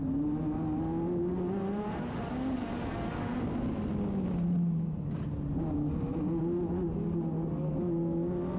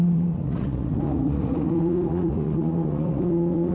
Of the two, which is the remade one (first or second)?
second